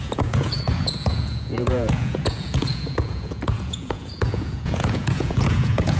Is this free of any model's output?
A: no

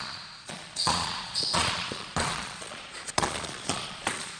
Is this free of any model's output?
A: no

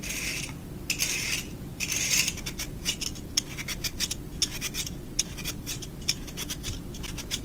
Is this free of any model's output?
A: yes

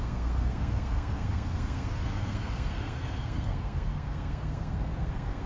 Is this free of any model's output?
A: no